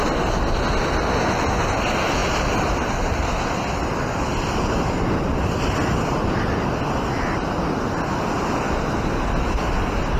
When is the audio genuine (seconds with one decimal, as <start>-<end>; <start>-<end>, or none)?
0.0-2.2; 6.8-8.4; 9.0-10.2